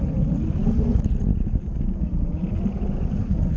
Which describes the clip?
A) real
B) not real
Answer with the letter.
A